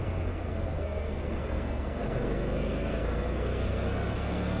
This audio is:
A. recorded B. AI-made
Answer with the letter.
B